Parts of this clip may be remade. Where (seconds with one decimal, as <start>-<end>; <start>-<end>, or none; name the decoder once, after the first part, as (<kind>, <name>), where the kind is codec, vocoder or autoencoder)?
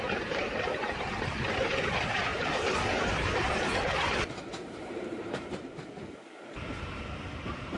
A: 0.0-1.1 (vocoder, BigVGAN v2); 1.7-7.8